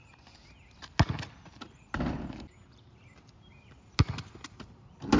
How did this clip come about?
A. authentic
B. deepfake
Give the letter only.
A